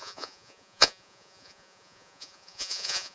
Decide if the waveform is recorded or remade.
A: remade